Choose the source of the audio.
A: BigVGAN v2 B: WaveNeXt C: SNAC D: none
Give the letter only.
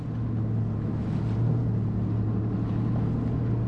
D